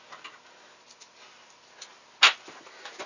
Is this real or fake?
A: real